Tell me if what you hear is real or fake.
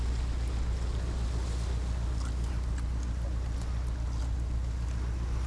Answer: real